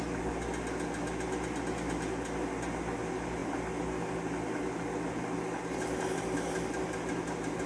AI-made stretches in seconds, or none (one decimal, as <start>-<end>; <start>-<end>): none